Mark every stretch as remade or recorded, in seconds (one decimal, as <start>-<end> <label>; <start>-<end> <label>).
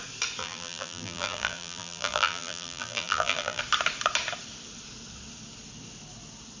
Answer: 0.0-0.4 recorded; 0.4-3.6 remade; 3.6-6.6 recorded